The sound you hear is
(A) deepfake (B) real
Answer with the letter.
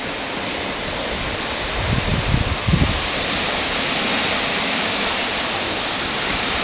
B